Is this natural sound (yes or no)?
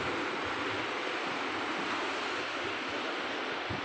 yes